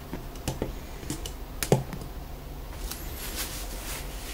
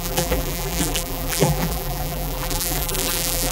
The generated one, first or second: second